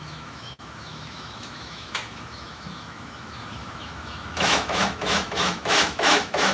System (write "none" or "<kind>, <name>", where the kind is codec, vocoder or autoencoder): autoencoder, DAC-VAE